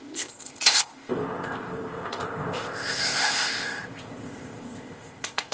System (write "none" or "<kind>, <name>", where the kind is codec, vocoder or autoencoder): codec, ZipCodec